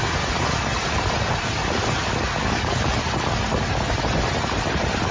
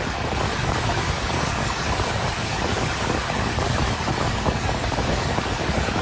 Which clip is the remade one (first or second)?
second